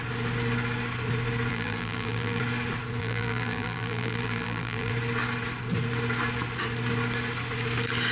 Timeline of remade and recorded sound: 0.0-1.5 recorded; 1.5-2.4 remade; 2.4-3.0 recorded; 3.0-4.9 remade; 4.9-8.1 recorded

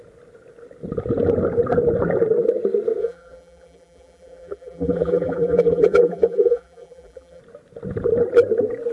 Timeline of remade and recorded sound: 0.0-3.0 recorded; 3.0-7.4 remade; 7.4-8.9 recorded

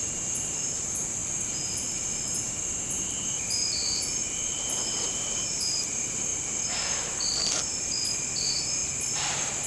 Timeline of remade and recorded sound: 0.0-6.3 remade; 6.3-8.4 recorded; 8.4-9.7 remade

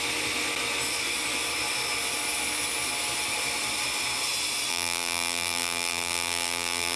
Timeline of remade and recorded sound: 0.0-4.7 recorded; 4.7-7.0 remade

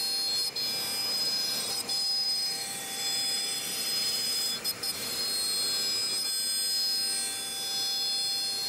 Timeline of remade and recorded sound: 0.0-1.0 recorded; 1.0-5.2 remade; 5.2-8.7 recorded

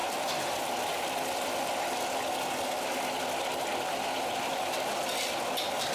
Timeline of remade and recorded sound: 0.0-5.9 recorded